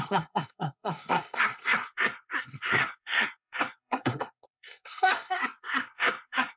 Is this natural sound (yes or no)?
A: no